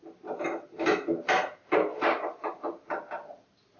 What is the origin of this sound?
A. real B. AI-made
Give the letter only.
A